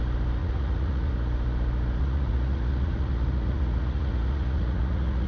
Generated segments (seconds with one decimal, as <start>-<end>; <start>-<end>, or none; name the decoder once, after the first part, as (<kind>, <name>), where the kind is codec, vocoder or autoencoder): 0.4-1.1 (vocoder, Vocos); 2.0-5.3